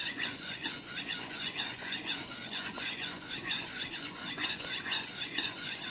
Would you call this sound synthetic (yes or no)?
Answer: yes